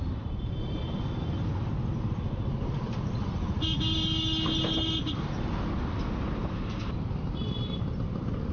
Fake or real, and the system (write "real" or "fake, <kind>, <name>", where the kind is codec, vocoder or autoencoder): real